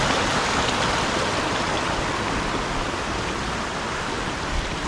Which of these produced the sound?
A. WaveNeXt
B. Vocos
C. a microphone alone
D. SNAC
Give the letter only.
C